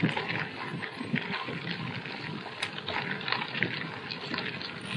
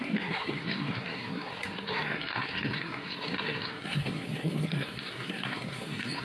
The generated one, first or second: second